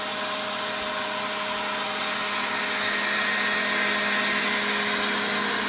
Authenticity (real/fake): real